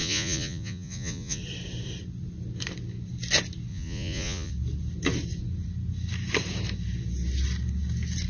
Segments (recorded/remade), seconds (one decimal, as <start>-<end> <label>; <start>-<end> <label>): 0.0-1.4 remade; 1.4-3.7 recorded; 3.7-4.5 remade; 4.5-8.3 recorded